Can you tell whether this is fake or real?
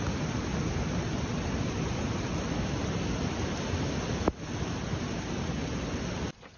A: real